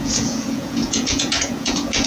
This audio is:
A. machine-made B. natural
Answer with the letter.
A